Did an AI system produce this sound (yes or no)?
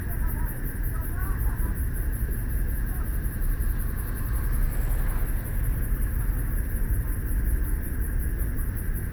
no